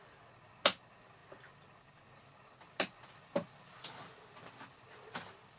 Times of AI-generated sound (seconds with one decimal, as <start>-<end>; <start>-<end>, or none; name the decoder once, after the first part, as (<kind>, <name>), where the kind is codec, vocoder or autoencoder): none